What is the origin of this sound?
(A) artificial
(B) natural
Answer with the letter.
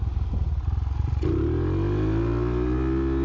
B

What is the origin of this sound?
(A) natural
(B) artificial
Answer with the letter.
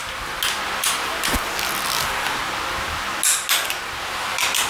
A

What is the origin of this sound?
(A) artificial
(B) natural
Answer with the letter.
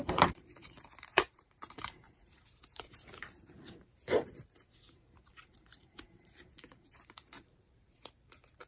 A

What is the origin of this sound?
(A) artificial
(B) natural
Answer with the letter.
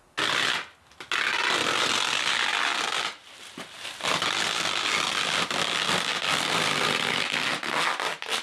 B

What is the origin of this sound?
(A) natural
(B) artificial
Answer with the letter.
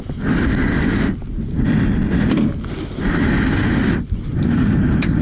A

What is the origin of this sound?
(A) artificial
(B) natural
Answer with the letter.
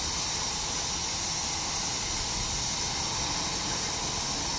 B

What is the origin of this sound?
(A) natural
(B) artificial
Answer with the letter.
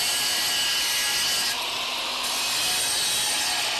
A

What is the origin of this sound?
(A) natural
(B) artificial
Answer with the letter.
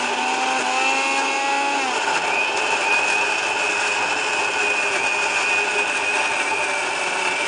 A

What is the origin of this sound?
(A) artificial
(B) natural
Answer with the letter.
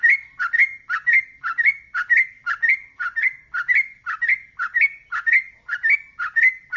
B